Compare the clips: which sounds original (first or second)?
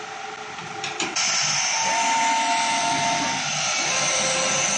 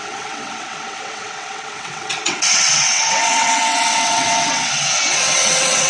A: first